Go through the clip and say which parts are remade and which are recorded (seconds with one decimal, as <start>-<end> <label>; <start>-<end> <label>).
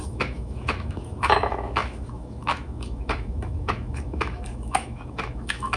0.0-5.8 remade